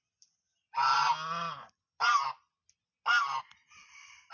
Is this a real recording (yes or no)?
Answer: yes